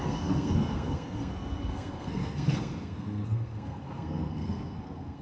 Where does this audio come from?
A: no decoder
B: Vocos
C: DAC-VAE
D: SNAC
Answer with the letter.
D